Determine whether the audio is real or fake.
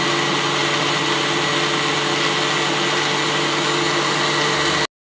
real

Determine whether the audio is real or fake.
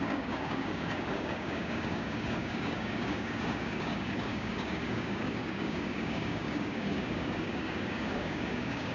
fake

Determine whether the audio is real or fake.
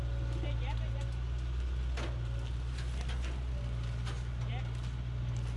real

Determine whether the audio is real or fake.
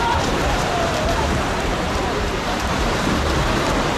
fake